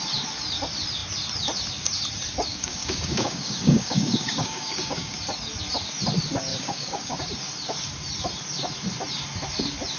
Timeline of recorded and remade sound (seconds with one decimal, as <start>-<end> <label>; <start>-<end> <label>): 0.0-2.5 recorded; 2.5-5.2 remade; 5.2-6.5 recorded; 6.5-7.3 remade; 7.3-10.0 recorded